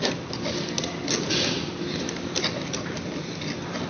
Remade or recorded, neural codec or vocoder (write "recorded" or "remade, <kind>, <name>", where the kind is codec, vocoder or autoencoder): recorded